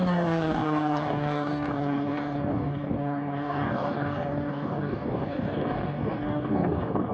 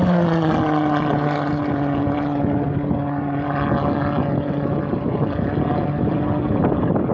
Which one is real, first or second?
second